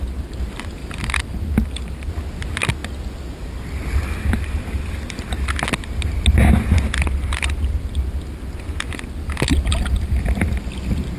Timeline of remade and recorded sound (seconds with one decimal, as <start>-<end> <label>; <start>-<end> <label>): 0.0-0.8 recorded; 0.8-1.4 remade; 1.4-9.2 recorded; 9.2-10.2 remade; 10.2-11.2 recorded